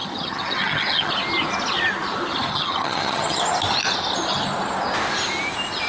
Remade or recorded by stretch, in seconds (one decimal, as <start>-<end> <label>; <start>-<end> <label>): 0.0-1.1 remade; 1.1-2.5 recorded; 2.5-3.4 remade; 3.4-5.9 recorded